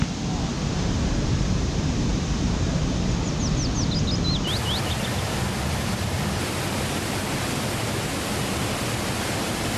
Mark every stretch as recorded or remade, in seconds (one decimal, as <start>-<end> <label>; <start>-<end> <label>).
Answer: 0.0-0.7 recorded; 0.7-1.7 remade; 1.7-2.1 recorded; 2.1-2.8 remade; 2.8-9.8 recorded